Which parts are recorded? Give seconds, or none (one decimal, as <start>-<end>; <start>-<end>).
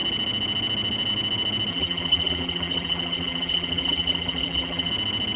0.0-1.7; 4.9-5.4